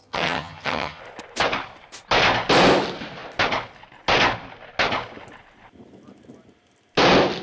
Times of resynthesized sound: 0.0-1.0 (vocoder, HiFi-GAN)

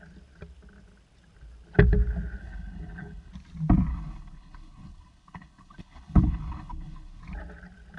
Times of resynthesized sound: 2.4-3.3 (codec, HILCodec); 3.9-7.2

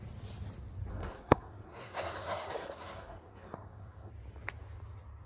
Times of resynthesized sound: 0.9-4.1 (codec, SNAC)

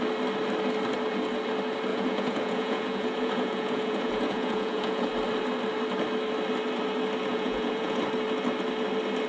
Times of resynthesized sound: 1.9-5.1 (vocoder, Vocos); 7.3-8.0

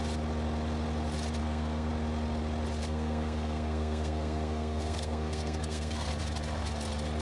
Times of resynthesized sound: 1.4-1.9 (codec, SNAC); 2.8-6.1

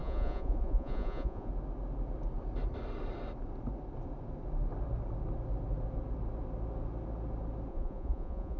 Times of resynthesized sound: 0.0-1.5 (vocoder, Vocos); 7.7-8.6